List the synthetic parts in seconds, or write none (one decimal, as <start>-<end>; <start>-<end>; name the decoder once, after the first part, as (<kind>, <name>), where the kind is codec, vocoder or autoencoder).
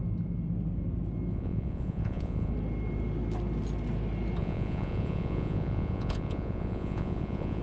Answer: 1.3-2.5 (vocoder, Vocos); 4.4-7.6